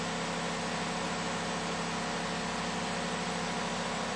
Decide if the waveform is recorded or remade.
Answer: recorded